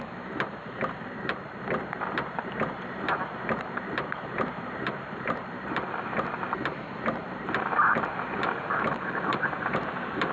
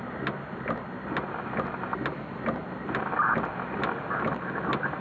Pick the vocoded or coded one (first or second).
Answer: first